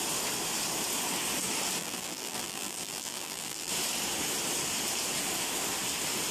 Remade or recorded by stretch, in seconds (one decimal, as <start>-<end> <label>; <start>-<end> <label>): 0.0-1.8 recorded; 1.8-3.7 remade; 3.7-6.3 recorded